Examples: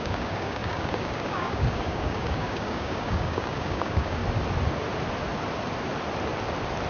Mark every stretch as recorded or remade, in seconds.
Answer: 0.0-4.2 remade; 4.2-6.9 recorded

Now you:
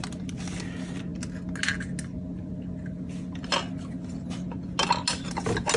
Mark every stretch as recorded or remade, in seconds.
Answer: 0.0-5.8 recorded